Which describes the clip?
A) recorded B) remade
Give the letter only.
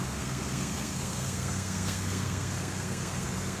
B